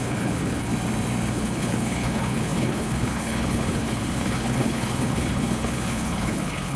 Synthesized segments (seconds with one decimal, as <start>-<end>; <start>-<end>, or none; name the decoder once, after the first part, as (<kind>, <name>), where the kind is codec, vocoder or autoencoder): 0.0-0.7 (codec, HILCodec); 1.3-6.8